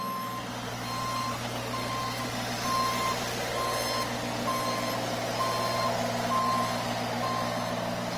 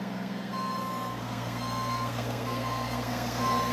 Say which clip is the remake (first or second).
second